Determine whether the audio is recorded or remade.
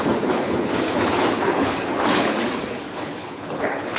remade